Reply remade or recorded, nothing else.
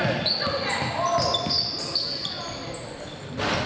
recorded